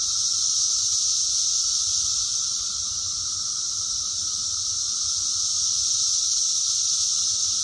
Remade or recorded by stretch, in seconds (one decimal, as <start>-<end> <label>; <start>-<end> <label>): 0.0-2.3 recorded; 2.3-4.2 remade; 4.2-7.6 recorded